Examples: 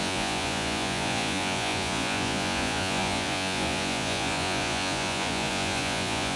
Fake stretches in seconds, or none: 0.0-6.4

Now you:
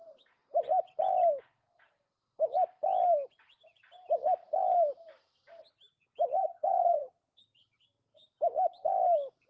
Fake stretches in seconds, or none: 6.4-7.4

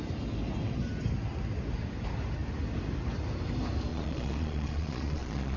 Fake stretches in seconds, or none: 3.9-5.6